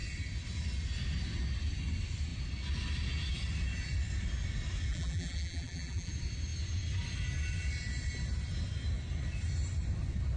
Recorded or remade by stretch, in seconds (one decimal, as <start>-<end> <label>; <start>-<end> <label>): 0.0-4.9 recorded; 4.9-6.1 remade; 6.1-10.4 recorded